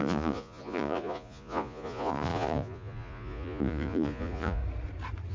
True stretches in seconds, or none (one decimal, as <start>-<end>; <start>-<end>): 4.6-5.3